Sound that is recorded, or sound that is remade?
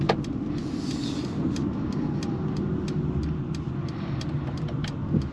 recorded